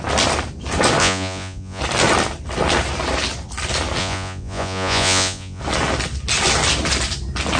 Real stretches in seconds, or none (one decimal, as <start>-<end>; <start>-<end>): 0.0-1.0; 1.8-4.0; 5.6-7.6